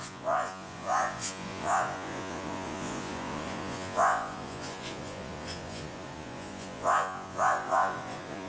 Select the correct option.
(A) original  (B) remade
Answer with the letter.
B